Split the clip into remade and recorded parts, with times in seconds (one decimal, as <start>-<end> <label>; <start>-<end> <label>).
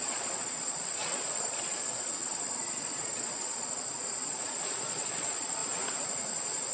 0.0-5.6 remade; 5.6-6.7 recorded